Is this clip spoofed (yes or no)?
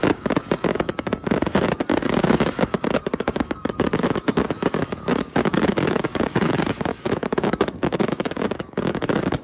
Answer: yes